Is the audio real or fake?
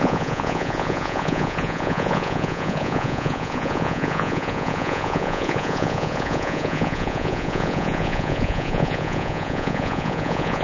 fake